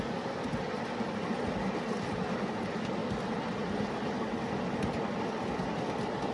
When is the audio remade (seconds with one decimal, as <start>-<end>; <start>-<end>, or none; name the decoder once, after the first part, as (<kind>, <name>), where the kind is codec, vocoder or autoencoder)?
none